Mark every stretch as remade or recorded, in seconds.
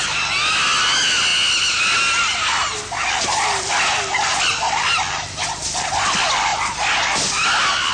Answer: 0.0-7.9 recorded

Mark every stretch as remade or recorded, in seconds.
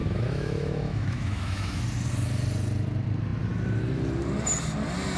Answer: 0.0-1.8 remade; 1.8-5.2 recorded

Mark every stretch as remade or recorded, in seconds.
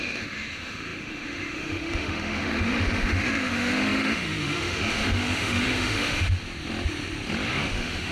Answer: 0.0-6.4 remade; 6.4-7.5 recorded; 7.5-8.1 remade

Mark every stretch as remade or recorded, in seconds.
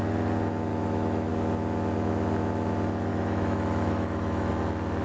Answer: 0.0-0.7 recorded; 0.7-1.3 remade; 1.3-3.1 recorded; 3.1-4.5 remade; 4.5-5.0 recorded